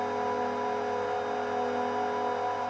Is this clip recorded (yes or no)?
yes